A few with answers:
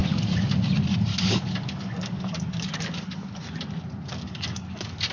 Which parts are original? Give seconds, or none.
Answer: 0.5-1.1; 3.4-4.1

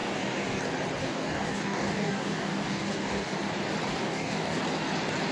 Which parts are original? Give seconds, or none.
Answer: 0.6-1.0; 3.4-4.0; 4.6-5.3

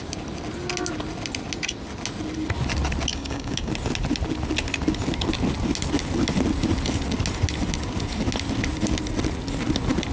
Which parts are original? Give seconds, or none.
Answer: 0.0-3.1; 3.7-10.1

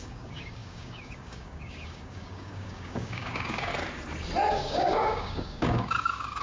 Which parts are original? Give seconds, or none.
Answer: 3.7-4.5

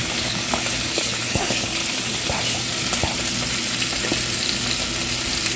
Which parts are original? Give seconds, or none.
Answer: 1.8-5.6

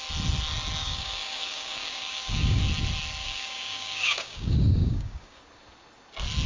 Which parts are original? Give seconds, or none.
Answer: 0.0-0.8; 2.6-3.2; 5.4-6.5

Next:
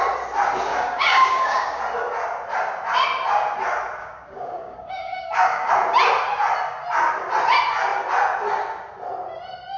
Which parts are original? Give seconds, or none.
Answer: 0.0-0.7; 1.8-4.0; 5.7-9.8

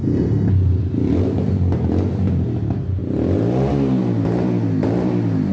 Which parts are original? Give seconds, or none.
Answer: 0.5-5.5